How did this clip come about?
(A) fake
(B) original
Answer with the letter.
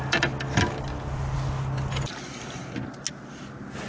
B